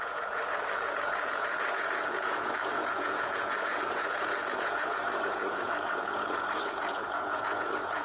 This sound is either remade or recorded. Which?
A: remade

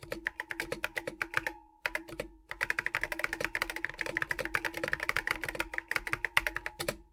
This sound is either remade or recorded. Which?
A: recorded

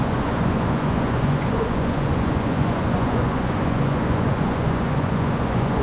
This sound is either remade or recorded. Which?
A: remade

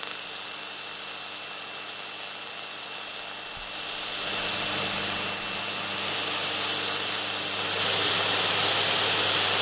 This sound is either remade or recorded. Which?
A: recorded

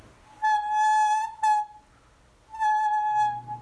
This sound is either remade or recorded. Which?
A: recorded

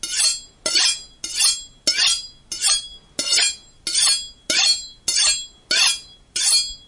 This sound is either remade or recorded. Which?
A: recorded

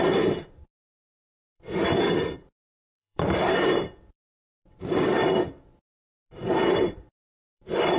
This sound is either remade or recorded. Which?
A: remade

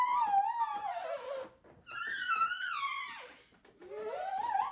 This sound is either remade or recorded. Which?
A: recorded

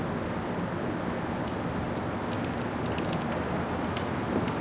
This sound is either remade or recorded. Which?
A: recorded